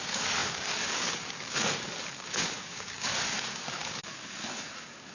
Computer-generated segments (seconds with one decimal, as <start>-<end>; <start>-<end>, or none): 0.0-5.1

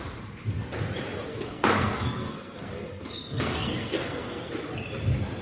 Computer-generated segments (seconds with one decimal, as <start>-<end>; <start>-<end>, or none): 1.3-4.5